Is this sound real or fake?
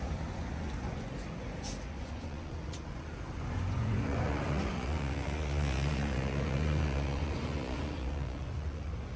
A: fake